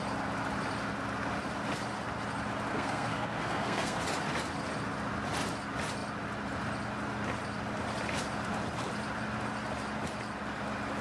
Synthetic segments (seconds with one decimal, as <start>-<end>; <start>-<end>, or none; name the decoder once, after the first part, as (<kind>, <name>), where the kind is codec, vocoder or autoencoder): 2.7-4.0 (codec, SNAC)